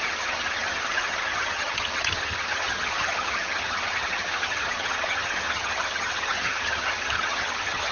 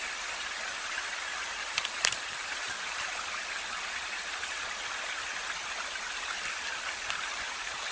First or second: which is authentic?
second